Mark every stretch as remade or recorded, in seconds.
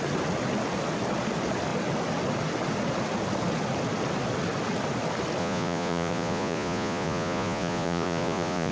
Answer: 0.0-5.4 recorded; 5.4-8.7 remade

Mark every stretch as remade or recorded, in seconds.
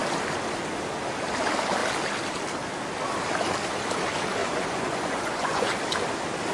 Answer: 0.0-4.4 recorded; 4.4-5.7 remade; 5.7-6.5 recorded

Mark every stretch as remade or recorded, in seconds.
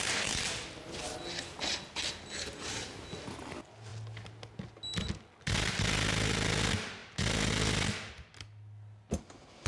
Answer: 0.0-9.7 recorded